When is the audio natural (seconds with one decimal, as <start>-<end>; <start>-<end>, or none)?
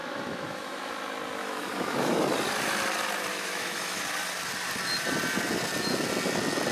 0.9-1.4; 2.2-3.3; 4.0-6.7